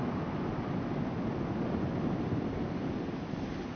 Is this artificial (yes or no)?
no